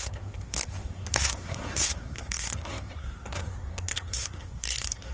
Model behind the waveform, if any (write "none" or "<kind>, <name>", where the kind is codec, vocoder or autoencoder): codec, SNAC